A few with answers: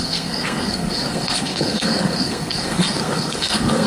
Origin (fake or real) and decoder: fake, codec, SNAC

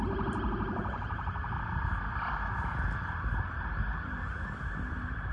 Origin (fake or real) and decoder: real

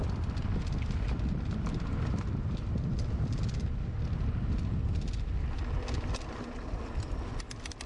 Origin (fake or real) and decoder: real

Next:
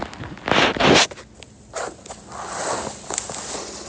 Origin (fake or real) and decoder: real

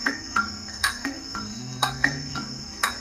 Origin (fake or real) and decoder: fake, codec, SNAC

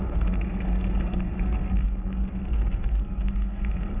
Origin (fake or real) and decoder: fake, codec, SNAC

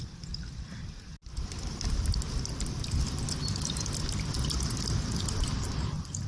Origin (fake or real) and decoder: real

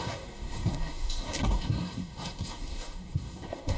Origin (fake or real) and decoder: fake, codec, SNAC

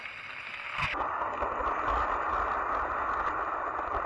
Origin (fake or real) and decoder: real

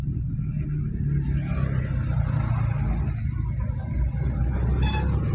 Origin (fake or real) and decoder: real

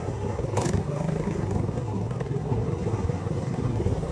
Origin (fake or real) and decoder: fake, codec, SNAC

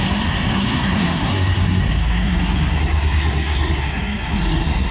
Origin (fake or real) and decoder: fake, codec, SNAC